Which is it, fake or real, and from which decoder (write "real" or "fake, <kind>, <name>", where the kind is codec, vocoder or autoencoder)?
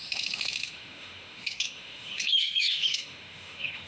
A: fake, autoencoder, DAC-VAE